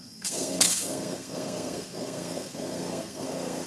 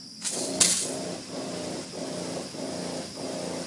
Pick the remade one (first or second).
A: first